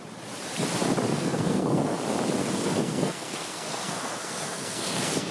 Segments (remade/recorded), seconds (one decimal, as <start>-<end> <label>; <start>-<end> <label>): 0.0-1.1 recorded; 1.1-2.0 remade; 2.0-2.4 recorded; 2.4-5.3 remade